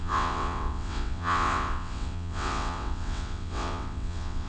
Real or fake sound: fake